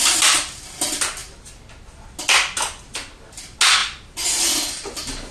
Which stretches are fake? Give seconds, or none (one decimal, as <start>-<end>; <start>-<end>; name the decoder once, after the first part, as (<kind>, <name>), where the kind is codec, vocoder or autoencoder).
none